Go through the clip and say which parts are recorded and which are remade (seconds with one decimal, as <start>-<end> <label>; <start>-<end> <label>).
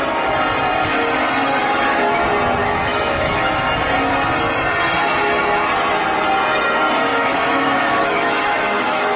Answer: 0.0-1.6 recorded; 1.6-2.2 remade; 2.2-2.6 recorded; 2.6-3.7 remade; 3.7-7.1 recorded; 7.1-9.2 remade